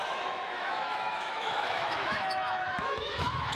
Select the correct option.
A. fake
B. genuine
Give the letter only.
A